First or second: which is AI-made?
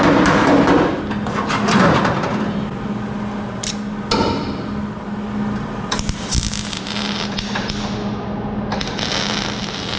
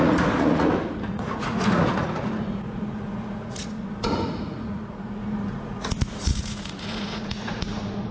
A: second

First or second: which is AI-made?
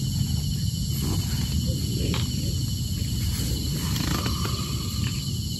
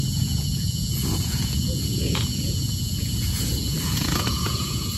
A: second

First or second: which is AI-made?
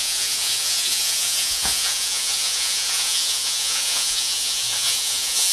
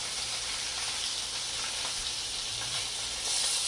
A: first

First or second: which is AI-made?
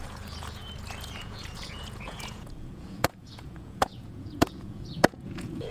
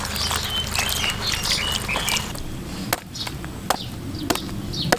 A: first